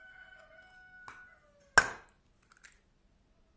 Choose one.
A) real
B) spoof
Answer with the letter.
A